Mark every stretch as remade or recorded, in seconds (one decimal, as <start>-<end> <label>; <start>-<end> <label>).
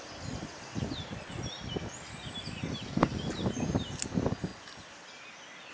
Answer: 0.0-5.7 recorded